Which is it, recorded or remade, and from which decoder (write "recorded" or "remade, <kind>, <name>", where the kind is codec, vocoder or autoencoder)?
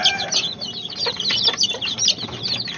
recorded